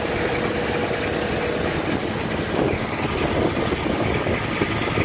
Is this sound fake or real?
real